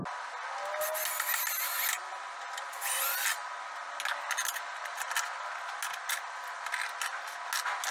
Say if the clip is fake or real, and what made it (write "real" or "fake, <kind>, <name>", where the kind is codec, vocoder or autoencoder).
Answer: real